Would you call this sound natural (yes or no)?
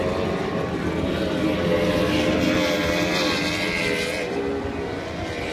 yes